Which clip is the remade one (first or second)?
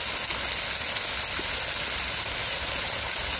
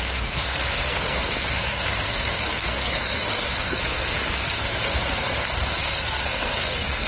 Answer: second